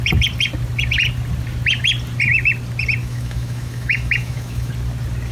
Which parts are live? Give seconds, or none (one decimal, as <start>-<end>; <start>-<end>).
0.0-3.0; 4.7-5.3